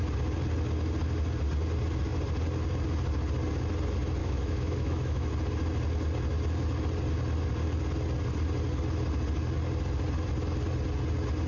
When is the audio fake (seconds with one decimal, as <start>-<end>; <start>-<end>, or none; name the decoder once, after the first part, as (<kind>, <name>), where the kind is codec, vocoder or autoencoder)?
4.2-5.3 (autoencoder, DAC-VAE)